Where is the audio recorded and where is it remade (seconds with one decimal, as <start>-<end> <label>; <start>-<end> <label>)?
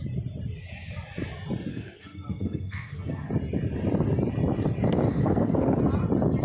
0.0-1.7 recorded; 1.7-3.3 remade; 3.3-5.1 recorded; 5.1-5.8 remade; 5.8-6.4 recorded